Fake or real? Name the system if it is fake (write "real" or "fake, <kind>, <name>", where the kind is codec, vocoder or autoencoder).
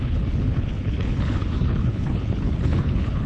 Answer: fake, codec, HILCodec